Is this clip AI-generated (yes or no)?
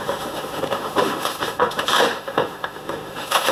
yes